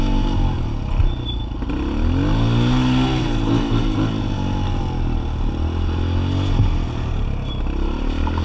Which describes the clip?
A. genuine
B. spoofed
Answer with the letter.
A